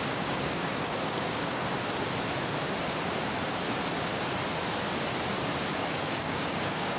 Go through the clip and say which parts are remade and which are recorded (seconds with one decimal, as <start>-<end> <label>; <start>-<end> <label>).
0.0-1.6 remade; 1.6-5.8 recorded; 5.8-7.0 remade